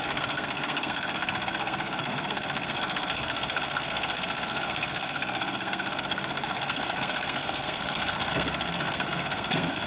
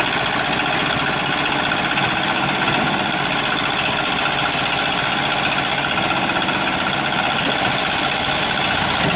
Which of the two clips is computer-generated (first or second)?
first